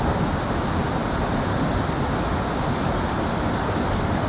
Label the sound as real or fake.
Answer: real